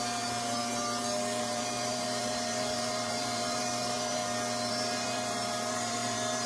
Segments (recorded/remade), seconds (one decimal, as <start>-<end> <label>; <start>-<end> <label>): 0.0-0.6 remade; 0.6-1.4 recorded; 1.4-4.2 remade; 4.2-4.7 recorded; 4.7-6.5 remade